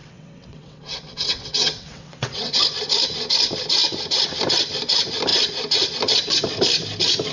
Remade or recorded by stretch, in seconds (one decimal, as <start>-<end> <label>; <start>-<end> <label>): 0.0-2.6 remade; 2.6-7.3 recorded